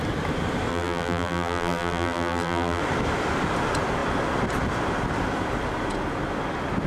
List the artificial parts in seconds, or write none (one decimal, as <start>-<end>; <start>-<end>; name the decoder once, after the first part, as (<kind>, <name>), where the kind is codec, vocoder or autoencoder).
0.7-2.8 (vocoder, BigVGAN v2)